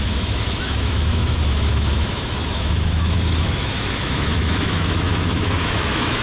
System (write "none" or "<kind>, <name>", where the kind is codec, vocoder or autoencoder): autoencoder, DAC-VAE